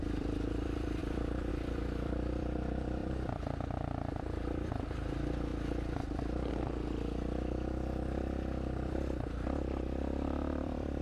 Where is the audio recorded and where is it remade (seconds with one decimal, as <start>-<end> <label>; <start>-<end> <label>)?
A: 0.0-5.5 remade; 5.5-8.9 recorded; 8.9-11.0 remade